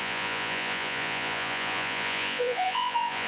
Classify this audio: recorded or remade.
remade